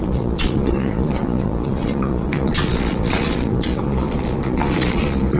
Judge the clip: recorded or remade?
remade